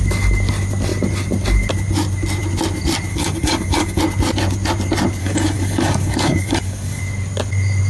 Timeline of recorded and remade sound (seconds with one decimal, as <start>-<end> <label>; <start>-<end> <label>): 0.0-3.1 recorded; 3.1-4.0 remade; 4.0-5.2 recorded; 5.2-7.0 remade; 7.0-7.9 recorded